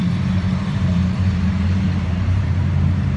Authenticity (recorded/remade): remade